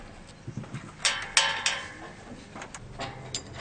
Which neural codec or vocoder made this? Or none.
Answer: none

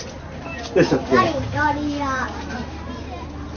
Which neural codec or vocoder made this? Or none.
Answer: none